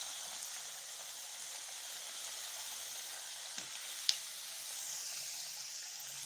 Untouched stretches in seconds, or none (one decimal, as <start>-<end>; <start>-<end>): 0.0-6.3